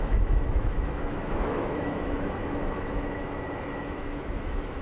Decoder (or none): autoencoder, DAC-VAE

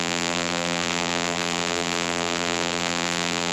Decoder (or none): vocoder, BigVGAN v2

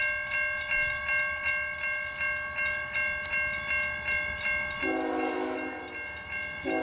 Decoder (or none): none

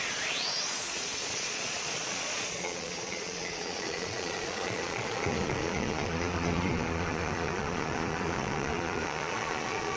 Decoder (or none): vocoder, Vocos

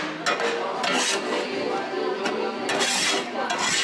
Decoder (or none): none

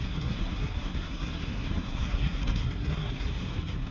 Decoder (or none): codec, SNAC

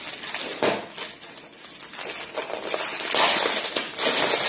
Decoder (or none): none